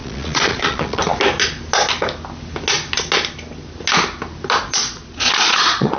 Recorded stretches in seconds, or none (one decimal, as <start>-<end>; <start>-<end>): 1.0-4.6